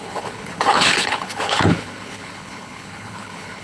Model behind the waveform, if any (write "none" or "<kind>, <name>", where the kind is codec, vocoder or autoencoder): codec, HILCodec